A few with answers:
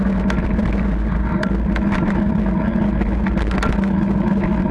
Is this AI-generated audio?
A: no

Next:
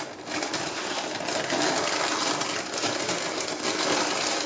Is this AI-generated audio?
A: no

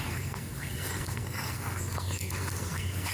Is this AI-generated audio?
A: yes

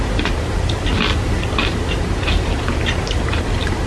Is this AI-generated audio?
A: no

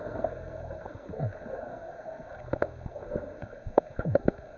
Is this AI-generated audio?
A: yes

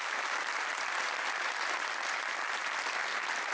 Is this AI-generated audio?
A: no